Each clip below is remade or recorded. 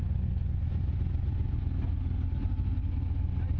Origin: recorded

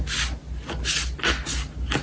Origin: recorded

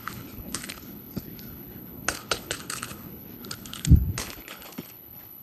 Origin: remade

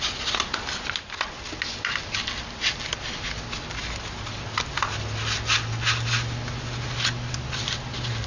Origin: recorded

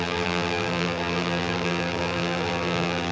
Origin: remade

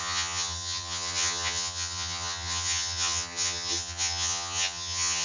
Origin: remade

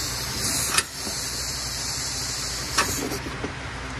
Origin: remade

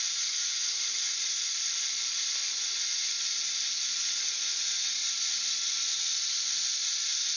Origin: recorded